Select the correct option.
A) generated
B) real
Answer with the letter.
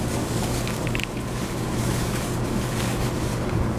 A